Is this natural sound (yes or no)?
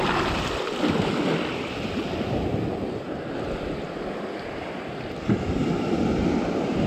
yes